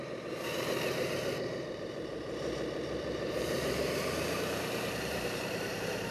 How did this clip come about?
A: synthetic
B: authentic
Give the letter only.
A